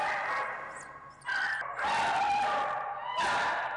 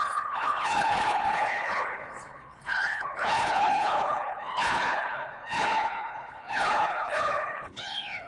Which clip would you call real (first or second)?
first